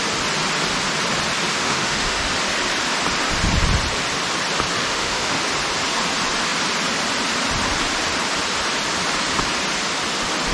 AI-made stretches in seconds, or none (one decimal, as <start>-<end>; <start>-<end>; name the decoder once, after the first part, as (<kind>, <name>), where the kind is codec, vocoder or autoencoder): 1.5-2.3 (autoencoder, DAC-VAE); 4.8-5.4